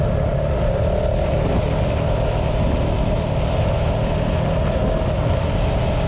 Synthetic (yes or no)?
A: no